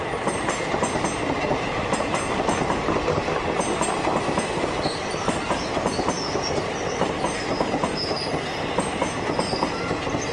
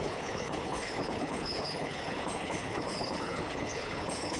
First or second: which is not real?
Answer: second